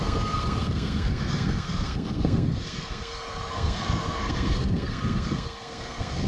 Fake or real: fake